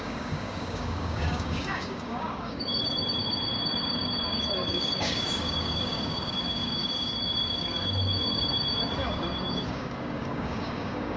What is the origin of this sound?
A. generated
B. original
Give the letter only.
A